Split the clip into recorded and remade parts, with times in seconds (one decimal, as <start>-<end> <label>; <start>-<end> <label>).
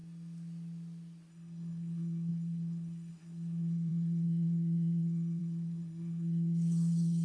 0.0-1.3 recorded; 1.3-7.2 remade